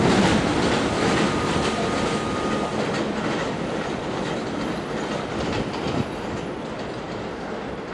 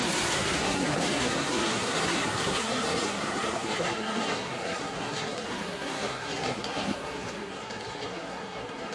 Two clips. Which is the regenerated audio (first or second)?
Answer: second